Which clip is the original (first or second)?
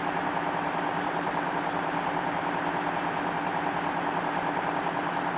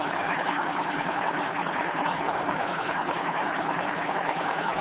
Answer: first